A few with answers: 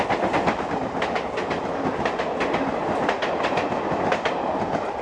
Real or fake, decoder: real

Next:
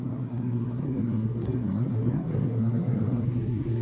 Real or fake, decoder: fake, codec, SNAC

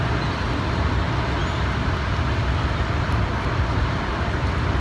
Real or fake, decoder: real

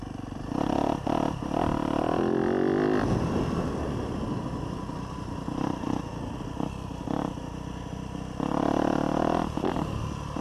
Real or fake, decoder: real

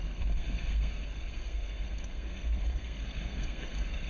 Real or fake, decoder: fake, codec, SNAC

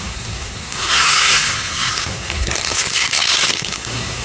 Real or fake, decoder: fake, codec, SNAC